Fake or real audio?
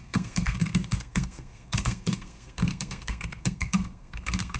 fake